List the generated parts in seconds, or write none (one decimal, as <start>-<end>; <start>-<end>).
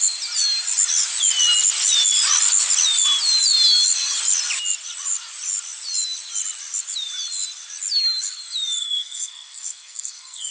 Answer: 8.8-10.5